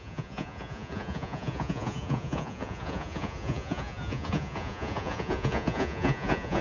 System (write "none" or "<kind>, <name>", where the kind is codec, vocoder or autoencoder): vocoder, Vocos